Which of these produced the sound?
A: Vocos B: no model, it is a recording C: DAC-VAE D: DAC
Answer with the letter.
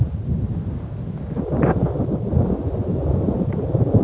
B